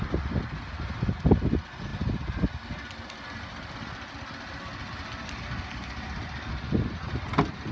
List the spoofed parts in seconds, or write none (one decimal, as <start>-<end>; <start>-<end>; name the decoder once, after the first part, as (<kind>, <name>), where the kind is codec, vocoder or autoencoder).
none